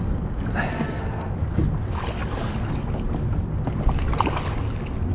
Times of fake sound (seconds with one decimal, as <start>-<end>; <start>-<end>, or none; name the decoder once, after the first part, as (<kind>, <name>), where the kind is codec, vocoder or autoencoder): 0.7-1.3 (codec, SNAC)

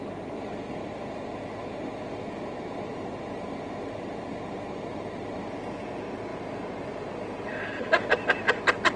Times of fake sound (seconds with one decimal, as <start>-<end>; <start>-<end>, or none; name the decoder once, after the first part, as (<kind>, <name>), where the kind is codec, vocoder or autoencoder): none

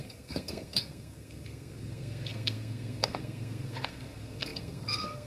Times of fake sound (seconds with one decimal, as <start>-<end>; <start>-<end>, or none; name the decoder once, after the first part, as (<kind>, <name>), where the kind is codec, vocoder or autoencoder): 0.0-5.3 (codec, SNAC)

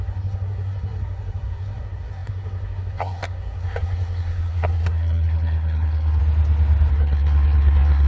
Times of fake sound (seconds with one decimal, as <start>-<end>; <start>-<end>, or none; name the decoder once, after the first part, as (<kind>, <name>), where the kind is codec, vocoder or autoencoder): 0.0-6.2 (codec, SNAC); 6.9-8.1

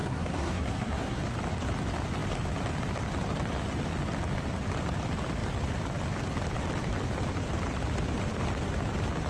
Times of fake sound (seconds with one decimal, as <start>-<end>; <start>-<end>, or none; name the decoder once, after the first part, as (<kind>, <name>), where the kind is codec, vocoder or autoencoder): 0.0-1.2 (codec, SNAC)

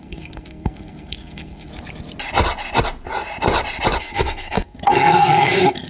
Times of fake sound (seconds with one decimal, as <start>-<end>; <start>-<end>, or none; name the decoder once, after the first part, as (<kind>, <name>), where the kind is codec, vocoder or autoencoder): 0.0-1.7 (codec, SNAC); 4.0-5.9

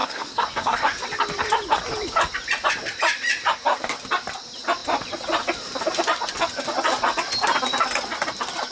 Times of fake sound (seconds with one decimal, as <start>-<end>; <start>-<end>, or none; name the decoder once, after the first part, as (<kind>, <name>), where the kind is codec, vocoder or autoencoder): 0.0-0.8 (codec, SNAC)

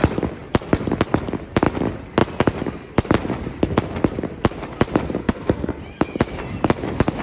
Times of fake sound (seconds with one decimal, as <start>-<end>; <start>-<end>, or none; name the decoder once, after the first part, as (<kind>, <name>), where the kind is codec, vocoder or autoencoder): 5.2-5.8 (codec, SNAC)